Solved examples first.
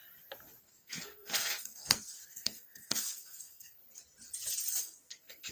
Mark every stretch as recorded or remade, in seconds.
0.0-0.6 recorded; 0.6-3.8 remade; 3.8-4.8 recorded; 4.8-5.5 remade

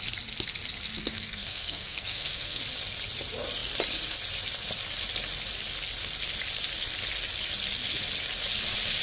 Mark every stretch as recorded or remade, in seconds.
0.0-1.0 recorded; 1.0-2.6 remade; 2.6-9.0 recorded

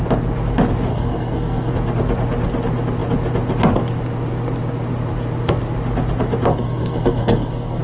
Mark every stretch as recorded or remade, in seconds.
0.0-0.9 recorded; 0.9-1.7 remade; 1.7-6.5 recorded; 6.5-7.8 remade